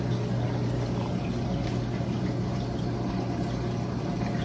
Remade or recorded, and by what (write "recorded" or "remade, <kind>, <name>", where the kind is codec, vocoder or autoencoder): recorded